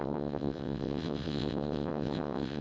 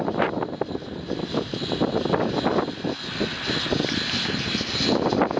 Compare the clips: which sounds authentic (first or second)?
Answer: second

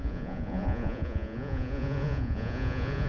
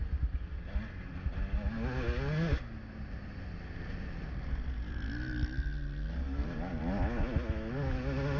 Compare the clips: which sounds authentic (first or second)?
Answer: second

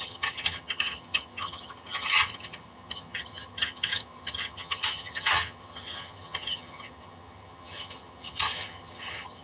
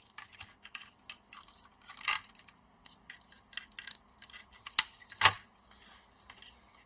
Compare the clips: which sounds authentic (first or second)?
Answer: second